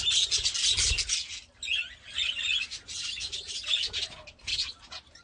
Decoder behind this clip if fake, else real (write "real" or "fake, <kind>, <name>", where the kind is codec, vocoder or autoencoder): real